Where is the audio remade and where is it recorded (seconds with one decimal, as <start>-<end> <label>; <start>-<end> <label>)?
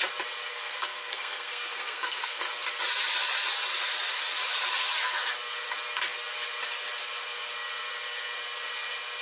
0.0-0.5 recorded; 0.5-2.4 remade; 2.4-9.2 recorded